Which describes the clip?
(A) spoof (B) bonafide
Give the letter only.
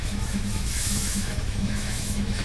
A